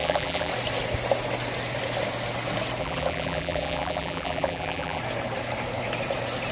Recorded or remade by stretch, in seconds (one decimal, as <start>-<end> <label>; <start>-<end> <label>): 0.0-0.5 remade; 0.5-2.8 recorded; 2.8-5.0 remade; 5.0-6.5 recorded